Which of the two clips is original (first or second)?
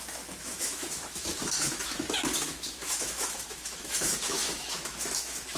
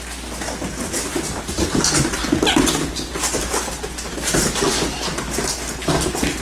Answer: second